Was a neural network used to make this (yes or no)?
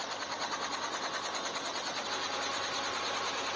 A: no